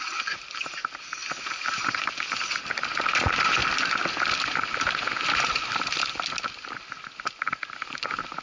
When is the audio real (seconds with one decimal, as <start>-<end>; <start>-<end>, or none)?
0.0-8.4